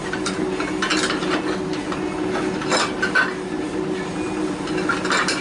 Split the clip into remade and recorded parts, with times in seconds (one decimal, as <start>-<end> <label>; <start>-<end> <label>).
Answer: 0.0-5.4 recorded